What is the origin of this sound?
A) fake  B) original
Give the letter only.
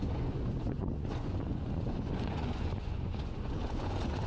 A